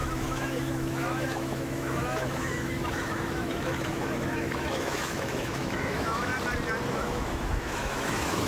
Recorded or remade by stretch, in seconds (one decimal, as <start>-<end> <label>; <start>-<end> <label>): 0.0-6.3 remade; 6.3-6.9 recorded; 6.9-8.5 remade